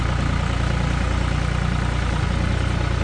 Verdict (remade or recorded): recorded